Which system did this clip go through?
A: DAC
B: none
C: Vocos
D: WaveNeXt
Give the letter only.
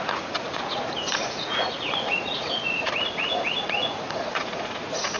C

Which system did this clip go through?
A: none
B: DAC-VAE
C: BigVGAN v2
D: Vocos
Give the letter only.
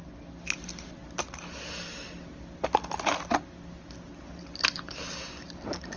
A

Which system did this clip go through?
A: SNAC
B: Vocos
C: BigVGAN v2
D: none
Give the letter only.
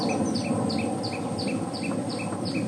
D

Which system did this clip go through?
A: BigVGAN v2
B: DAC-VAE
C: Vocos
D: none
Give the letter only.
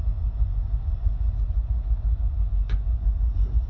C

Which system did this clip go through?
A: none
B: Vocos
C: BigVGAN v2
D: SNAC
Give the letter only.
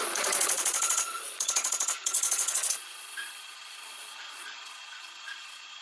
B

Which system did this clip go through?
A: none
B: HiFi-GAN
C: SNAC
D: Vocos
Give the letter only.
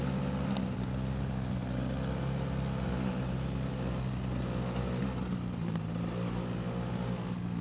A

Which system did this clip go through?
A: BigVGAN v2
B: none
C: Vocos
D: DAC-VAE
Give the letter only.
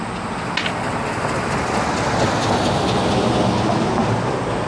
B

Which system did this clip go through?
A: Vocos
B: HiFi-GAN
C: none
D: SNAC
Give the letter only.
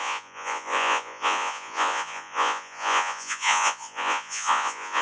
A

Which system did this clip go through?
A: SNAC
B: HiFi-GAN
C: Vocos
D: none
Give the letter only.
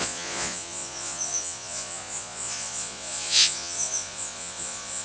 C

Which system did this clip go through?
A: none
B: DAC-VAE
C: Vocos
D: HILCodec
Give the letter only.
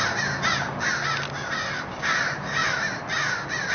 A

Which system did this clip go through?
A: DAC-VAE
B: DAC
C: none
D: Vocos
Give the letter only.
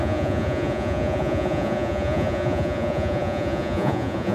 D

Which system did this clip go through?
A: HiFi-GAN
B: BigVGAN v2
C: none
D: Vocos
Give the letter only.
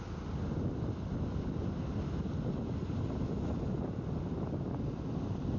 C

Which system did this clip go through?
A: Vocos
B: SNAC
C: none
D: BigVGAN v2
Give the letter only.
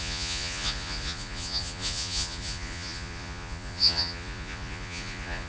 A